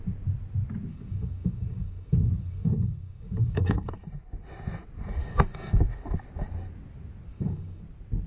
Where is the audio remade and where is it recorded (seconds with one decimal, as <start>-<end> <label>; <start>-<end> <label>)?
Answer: 0.0-0.9 recorded; 0.9-3.9 remade; 3.9-5.2 recorded; 5.2-5.8 remade; 5.8-7.3 recorded; 7.3-7.8 remade; 7.8-8.3 recorded